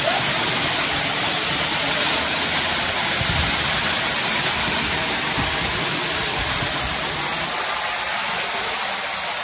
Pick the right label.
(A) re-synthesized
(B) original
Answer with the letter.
B